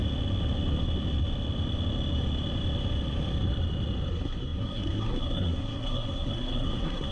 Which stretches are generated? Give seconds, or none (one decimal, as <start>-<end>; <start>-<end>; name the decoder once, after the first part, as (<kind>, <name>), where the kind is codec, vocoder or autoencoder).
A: 4.1-7.1 (codec, SNAC)